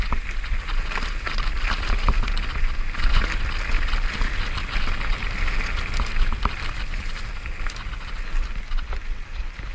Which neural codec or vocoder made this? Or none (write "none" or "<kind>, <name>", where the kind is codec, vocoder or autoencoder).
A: none